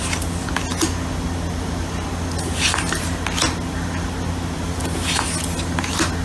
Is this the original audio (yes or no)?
yes